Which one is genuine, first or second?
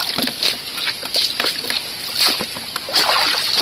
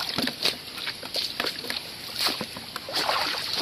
first